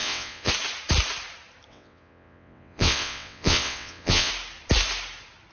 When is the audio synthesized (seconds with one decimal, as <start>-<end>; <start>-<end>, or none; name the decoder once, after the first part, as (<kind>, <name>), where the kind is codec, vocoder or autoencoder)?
0.0-0.5 (vocoder, WaveNeXt); 1.7-4.3